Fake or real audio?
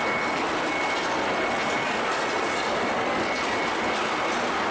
real